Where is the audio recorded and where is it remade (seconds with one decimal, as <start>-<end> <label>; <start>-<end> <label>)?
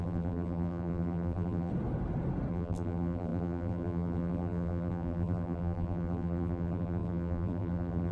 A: 0.0-1.7 remade; 1.7-2.5 recorded; 2.5-8.1 remade